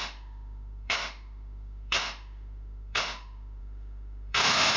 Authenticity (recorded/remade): remade